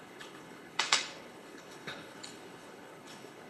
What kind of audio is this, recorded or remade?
remade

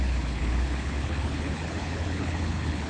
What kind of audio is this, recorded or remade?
remade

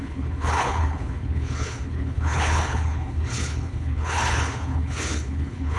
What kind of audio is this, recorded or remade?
remade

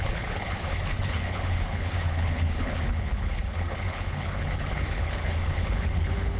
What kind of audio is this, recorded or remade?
remade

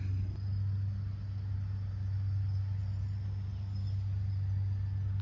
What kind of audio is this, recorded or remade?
recorded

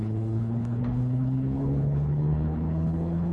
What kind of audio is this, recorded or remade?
remade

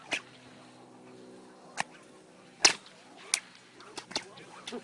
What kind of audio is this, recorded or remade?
recorded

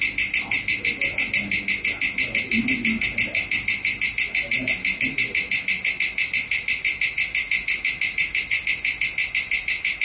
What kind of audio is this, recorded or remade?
recorded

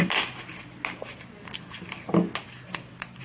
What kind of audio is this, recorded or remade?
recorded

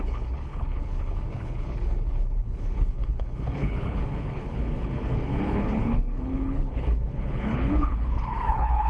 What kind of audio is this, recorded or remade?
remade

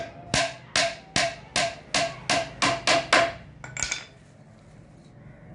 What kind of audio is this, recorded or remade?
recorded